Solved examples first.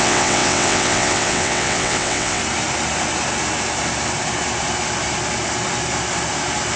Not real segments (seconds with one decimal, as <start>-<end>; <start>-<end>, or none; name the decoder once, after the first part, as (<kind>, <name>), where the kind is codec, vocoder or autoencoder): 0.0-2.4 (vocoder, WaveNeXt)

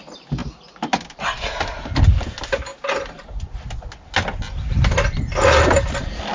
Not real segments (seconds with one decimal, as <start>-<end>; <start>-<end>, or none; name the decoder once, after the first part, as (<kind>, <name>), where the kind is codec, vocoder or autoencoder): none

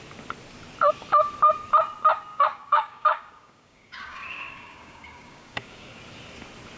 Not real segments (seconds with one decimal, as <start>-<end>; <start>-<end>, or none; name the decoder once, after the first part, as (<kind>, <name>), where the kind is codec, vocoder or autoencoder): 2.3-6.0 (codec, DAC)

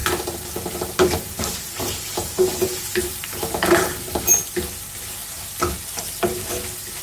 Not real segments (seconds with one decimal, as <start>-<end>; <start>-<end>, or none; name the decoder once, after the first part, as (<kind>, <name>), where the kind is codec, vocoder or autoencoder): 0.0-4.2 (vocoder, BigVGAN v2)

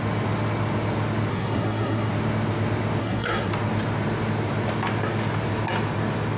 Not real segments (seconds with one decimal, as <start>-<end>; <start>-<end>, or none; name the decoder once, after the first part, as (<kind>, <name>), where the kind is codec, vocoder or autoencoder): 1.3-2.1 (codec, SNAC); 3.0-3.5

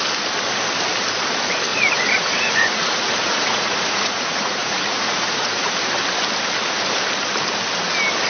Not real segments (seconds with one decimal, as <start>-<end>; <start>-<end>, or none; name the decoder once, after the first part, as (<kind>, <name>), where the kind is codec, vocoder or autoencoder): 1.7-5.7 (vocoder, Vocos)